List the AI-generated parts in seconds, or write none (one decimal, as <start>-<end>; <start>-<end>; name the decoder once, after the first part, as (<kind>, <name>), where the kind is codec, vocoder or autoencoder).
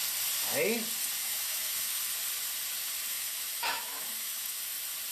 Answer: 1.2-2.0 (autoencoder, DAC-VAE); 3.1-4.6